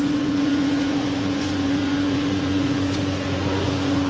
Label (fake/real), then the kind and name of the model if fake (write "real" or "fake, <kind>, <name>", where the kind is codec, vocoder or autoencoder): fake, vocoder, Vocos